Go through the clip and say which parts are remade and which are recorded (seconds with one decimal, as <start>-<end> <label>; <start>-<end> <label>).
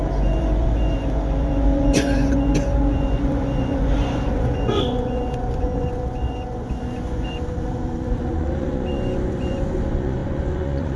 0.0-11.0 remade